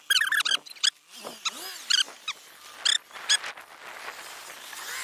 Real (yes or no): yes